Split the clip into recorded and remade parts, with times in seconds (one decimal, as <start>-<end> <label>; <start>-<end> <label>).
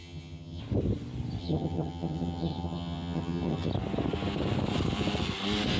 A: 0.0-0.6 remade; 0.6-1.4 recorded; 1.4-3.7 remade; 3.7-5.8 recorded